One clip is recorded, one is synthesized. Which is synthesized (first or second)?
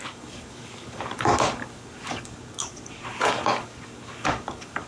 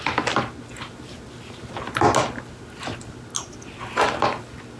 first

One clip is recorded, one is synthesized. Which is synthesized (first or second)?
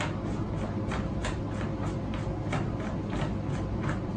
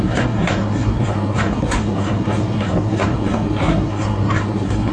second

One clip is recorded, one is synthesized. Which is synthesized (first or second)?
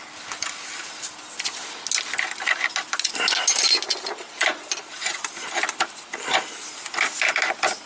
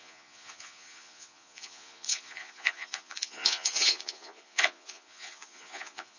second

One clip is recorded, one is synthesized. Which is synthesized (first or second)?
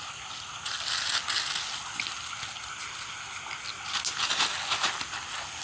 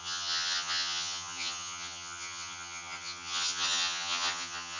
second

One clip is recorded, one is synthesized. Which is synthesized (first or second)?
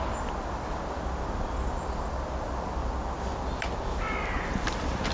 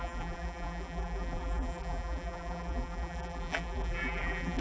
second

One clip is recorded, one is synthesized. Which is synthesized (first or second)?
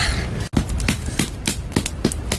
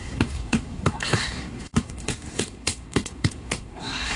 second